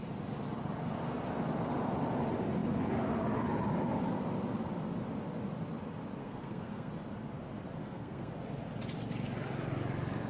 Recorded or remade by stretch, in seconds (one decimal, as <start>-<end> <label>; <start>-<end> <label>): 0.0-6.2 recorded; 6.2-6.9 remade; 6.9-7.8 recorded; 7.8-8.3 remade; 8.3-10.3 recorded